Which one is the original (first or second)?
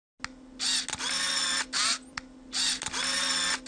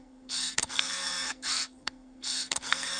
first